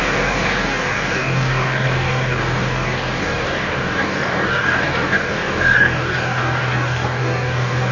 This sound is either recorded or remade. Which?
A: remade